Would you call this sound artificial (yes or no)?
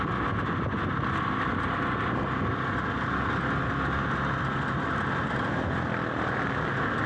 no